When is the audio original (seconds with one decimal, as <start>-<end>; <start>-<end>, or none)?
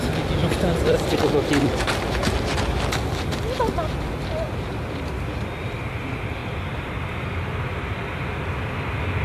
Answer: 0.0-6.4; 7.3-9.2